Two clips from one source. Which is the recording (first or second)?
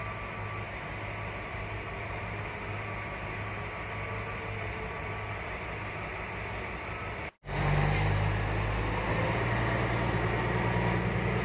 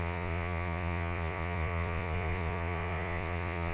first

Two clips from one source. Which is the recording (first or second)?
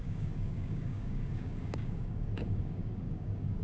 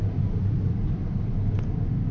second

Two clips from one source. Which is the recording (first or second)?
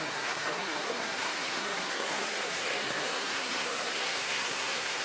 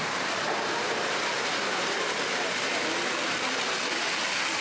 second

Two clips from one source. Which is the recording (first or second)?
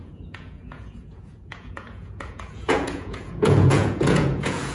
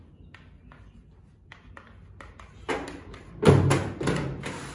second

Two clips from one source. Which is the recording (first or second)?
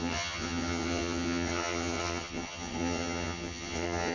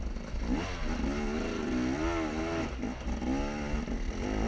second